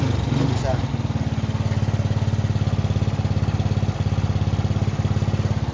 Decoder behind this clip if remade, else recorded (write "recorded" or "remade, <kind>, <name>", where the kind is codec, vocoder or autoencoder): recorded